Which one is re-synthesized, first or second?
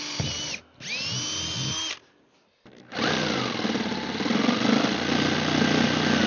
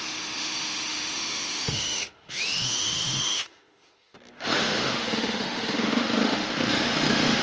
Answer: second